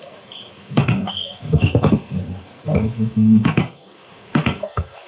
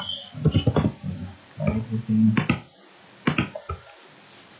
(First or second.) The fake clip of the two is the first